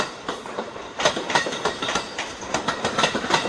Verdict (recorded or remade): remade